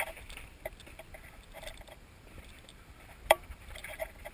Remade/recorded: remade